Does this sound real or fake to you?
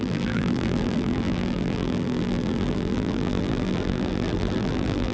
fake